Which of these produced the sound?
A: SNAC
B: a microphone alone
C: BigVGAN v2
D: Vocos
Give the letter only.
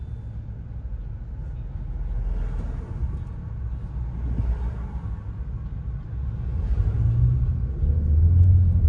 B